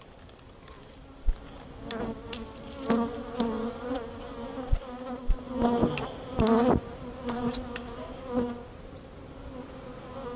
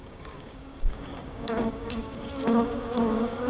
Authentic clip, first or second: first